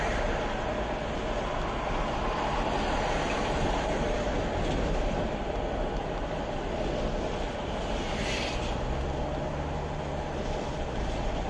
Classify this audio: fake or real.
real